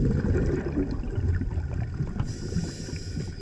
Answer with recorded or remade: recorded